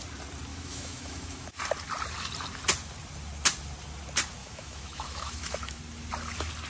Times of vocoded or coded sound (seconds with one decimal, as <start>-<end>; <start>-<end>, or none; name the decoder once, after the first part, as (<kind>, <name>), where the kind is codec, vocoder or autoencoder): 0.5-1.6 (autoencoder, DAC-VAE); 4.4-5.8